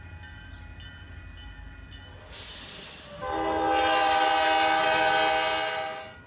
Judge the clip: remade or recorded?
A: recorded